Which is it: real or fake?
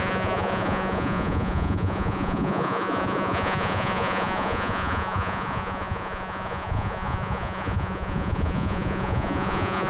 fake